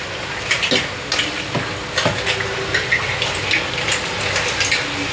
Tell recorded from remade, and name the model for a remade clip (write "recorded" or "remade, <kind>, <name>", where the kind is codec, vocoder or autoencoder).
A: recorded